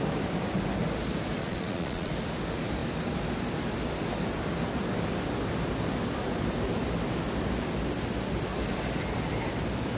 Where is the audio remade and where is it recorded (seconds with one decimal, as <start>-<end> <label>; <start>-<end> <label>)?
0.0-1.4 recorded; 1.4-2.1 remade; 2.1-10.0 recorded